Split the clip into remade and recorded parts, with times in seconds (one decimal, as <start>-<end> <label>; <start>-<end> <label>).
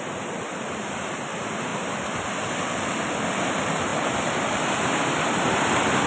0.0-6.1 recorded